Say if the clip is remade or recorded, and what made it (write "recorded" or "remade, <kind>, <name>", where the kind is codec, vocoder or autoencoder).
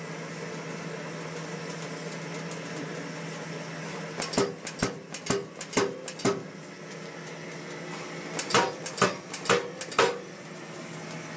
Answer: recorded